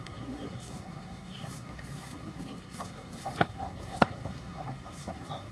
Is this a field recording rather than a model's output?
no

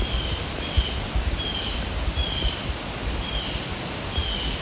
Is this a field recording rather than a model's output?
yes